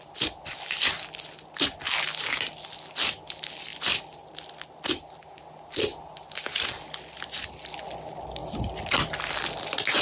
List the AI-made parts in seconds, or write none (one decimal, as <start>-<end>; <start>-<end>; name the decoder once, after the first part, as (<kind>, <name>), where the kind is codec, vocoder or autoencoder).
none